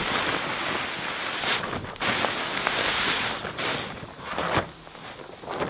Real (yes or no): yes